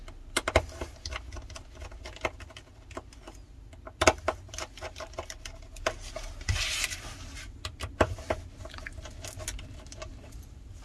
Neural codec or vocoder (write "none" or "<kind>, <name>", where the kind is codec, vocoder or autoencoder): none